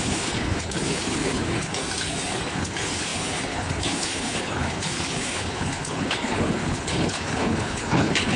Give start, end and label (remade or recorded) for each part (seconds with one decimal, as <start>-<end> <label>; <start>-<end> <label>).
0.0-1.8 remade; 1.8-2.5 recorded; 2.5-8.4 remade